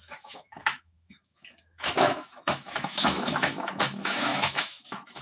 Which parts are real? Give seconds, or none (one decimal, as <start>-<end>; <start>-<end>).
none